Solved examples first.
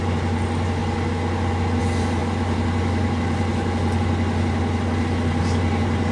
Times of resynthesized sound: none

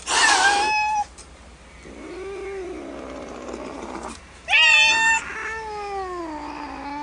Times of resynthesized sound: none

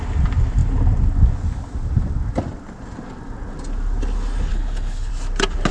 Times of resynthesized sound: 4.5-5.1 (codec, HILCodec)

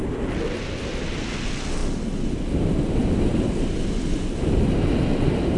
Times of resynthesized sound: none